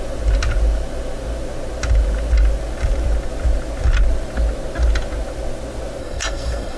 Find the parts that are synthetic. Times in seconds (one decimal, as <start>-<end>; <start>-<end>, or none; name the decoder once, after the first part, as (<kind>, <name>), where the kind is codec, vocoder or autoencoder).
6.0-6.8 (codec, SNAC)